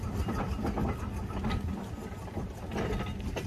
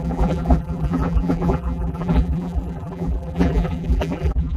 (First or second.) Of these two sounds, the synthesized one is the second